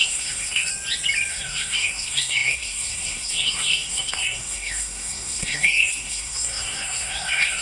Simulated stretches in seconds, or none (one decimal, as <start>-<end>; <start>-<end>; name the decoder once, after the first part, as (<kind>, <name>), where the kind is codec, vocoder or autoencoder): 0.0-0.7 (codec, SNAC); 1.3-7.6